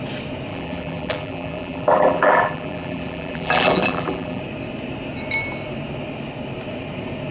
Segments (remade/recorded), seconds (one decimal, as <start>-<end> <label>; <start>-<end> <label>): 0.0-0.5 recorded; 0.5-4.4 remade; 4.4-7.3 recorded